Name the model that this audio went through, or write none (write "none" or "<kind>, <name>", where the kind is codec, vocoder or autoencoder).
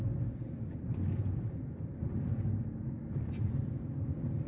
none